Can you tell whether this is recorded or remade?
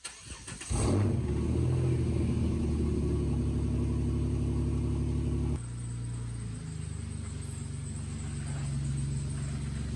recorded